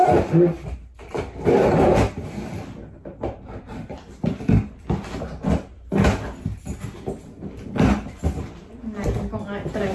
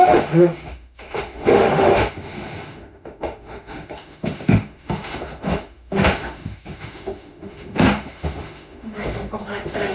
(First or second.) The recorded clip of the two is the first